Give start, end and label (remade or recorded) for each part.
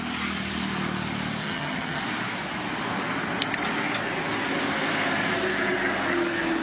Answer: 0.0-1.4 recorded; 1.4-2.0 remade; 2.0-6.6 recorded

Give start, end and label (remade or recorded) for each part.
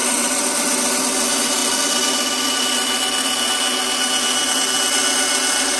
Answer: 0.0-5.8 recorded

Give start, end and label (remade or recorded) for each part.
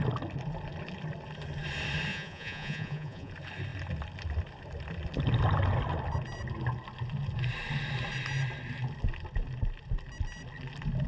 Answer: 0.0-2.1 recorded; 2.1-3.3 remade; 3.3-11.1 recorded